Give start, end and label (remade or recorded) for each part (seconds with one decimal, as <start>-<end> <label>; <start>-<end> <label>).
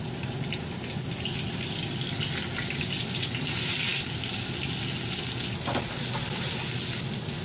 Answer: 0.0-7.4 recorded